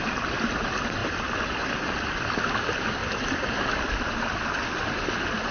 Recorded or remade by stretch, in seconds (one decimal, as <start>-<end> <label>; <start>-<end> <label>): 0.0-5.5 recorded